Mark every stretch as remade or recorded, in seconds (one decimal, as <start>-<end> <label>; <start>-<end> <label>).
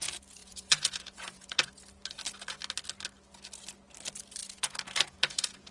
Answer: 0.0-0.4 recorded; 0.4-1.7 remade; 1.7-4.4 recorded; 4.4-5.7 remade